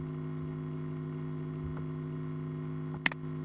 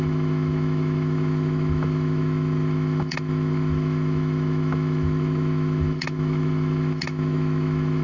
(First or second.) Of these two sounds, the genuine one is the first